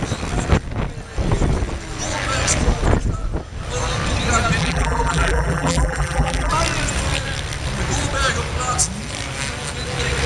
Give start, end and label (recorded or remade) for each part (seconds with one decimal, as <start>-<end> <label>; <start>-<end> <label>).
0.0-4.6 recorded; 4.6-6.5 remade; 6.5-10.3 recorded